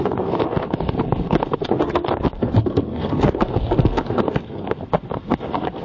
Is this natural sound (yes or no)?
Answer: no